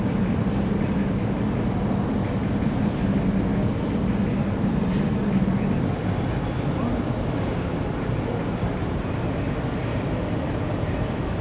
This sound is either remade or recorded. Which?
recorded